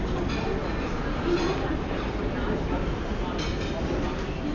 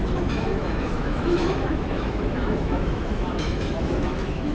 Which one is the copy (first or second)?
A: second